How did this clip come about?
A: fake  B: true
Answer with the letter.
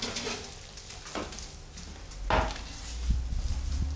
B